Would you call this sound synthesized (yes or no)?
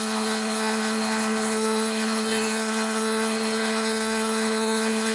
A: yes